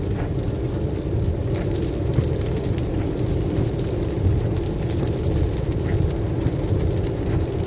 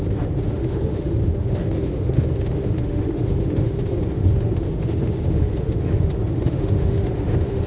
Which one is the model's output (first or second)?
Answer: second